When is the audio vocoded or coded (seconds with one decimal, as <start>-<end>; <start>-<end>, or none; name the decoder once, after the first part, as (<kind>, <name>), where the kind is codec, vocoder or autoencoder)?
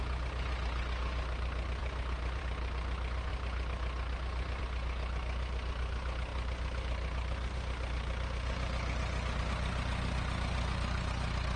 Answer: none